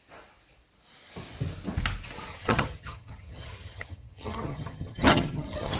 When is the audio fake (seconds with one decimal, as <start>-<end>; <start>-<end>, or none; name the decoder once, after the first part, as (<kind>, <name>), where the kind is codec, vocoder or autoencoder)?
2.3-5.8 (vocoder, HiFi-GAN)